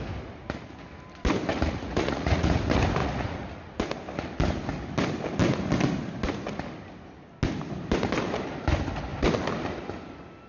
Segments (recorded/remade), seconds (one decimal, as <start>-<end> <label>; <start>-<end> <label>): 0.0-1.5 recorded; 1.5-2.6 remade; 2.6-3.0 recorded; 3.0-3.8 remade; 3.8-10.5 recorded